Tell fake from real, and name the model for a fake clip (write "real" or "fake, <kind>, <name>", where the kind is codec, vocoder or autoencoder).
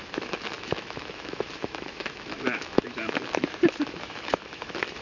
fake, autoencoder, DAC-VAE